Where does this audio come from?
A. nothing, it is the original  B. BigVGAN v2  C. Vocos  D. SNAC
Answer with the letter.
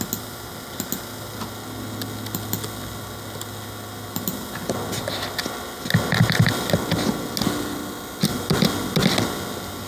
A